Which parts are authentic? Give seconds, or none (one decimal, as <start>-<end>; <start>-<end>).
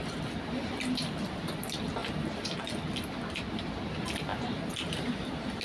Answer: 2.0-3.5; 4.3-4.9